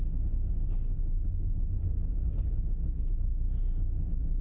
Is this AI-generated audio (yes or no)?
no